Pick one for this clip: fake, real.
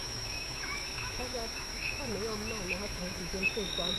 fake